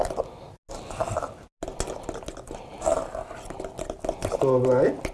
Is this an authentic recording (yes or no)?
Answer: yes